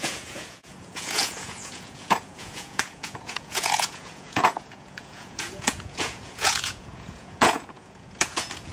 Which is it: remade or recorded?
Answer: remade